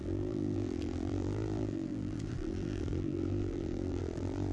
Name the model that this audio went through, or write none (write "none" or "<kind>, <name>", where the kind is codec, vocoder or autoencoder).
vocoder, BigVGAN v2